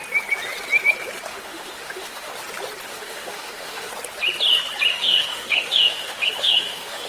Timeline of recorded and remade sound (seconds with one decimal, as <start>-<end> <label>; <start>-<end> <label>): 0.0-1.3 recorded; 1.3-2.3 remade; 2.3-2.9 recorded; 2.9-3.9 remade; 3.9-4.9 recorded; 4.9-7.1 remade